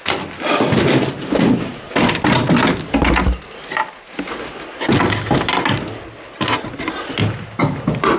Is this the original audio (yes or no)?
yes